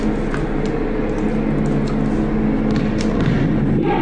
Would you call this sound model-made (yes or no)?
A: no